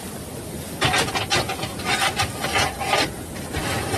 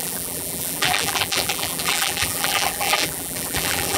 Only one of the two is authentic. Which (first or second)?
first